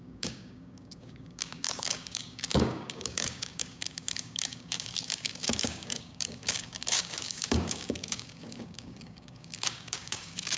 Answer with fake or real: fake